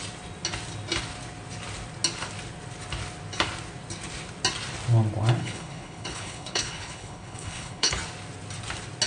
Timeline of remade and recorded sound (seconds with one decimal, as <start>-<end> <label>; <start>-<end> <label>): 0.0-5.4 recorded; 5.4-7.9 remade; 7.9-9.1 recorded